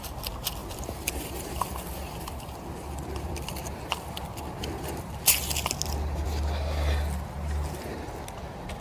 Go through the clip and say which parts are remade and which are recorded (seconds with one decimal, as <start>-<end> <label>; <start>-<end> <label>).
0.0-0.6 recorded; 0.6-5.1 remade; 5.1-8.8 recorded